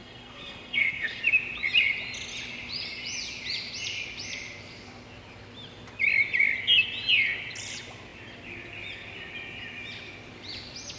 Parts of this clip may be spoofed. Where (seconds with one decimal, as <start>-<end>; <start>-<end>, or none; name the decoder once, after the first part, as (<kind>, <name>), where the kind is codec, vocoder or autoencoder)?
0.0-1.2 (codec, SNAC)